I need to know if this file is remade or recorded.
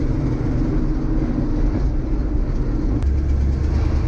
recorded